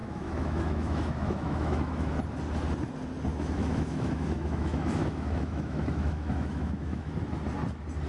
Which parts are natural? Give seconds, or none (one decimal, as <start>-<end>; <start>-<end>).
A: 2.1-3.3; 7.1-8.1